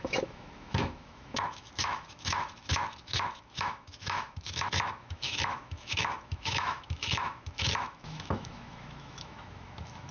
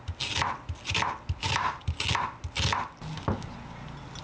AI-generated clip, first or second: first